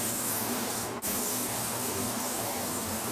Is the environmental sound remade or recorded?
remade